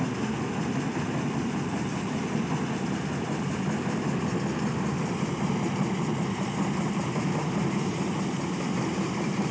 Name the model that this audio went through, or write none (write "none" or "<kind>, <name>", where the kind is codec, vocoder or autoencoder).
none